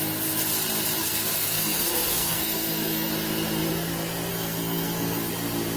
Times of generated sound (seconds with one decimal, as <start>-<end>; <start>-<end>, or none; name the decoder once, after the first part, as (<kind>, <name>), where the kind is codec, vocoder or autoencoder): 1.0-3.1 (codec, SNAC); 4.3-5.3